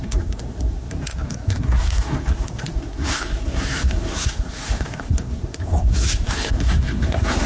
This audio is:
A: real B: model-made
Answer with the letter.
B